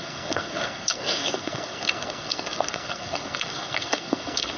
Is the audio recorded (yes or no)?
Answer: no